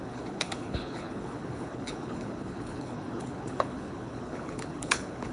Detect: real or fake fake